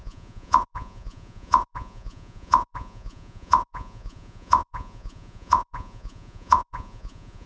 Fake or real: fake